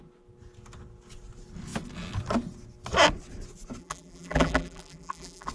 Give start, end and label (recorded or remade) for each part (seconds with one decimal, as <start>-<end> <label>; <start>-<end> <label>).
0.0-3.8 recorded; 3.8-5.5 remade